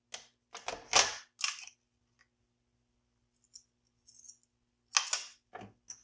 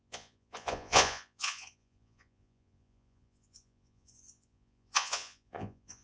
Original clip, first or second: first